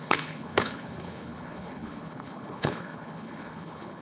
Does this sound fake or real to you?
fake